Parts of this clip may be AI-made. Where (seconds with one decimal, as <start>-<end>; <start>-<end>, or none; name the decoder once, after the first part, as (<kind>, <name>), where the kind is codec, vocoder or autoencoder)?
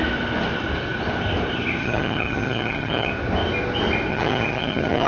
1.8-3.1 (vocoder, HiFi-GAN); 4.1-5.1